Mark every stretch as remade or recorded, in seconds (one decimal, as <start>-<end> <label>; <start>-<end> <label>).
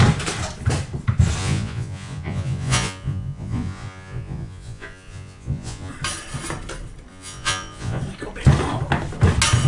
0.0-1.4 recorded; 1.4-5.9 remade; 5.9-7.1 recorded; 7.1-8.0 remade; 8.0-9.7 recorded